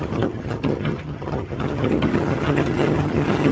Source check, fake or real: fake